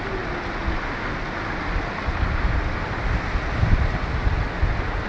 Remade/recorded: recorded